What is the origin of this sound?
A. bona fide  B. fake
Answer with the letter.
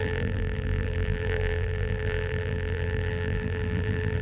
B